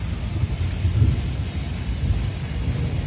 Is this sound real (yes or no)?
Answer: yes